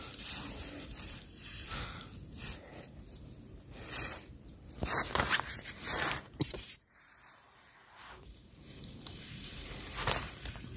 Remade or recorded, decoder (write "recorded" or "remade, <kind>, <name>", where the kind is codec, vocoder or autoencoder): remade, vocoder, BigVGAN v2